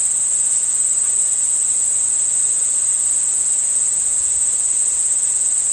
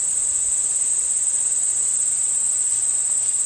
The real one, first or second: second